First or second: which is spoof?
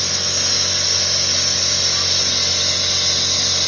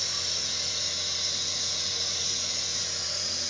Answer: second